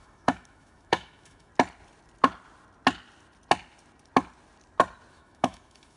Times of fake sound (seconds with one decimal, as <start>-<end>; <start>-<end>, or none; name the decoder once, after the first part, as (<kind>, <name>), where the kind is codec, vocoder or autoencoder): 0.0-1.5 (autoencoder, DAC-VAE); 5.1-6.0